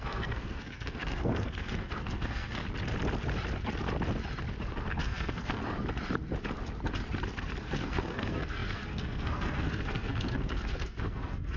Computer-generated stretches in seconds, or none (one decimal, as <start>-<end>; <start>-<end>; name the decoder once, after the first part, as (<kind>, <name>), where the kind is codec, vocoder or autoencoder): 0.0-2.6 (codec, SNAC); 5.0-5.6; 7.6-11.6